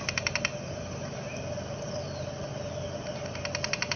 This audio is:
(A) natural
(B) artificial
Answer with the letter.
A